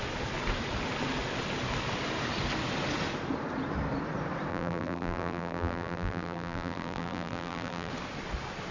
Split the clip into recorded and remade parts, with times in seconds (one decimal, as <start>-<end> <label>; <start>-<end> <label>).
0.0-4.5 recorded; 4.5-7.9 remade; 7.9-8.7 recorded

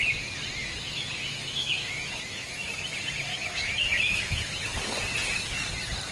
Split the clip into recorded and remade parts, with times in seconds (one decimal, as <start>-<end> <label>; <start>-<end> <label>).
0.0-0.6 recorded; 0.6-2.7 remade; 2.7-3.3 recorded; 3.3-4.4 remade; 4.4-6.1 recorded

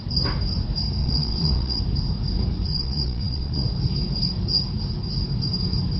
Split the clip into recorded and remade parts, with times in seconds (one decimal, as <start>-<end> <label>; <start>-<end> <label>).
0.0-1.0 recorded; 1.0-1.8 remade; 1.8-2.7 recorded; 2.7-3.6 remade; 3.6-6.0 recorded

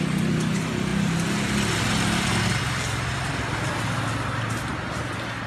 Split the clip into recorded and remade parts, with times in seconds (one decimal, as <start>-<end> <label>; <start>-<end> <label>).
0.0-5.5 recorded

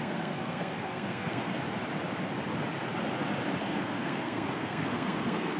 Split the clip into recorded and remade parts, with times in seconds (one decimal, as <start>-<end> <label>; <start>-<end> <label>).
0.0-1.6 remade; 1.6-3.6 recorded; 3.6-5.6 remade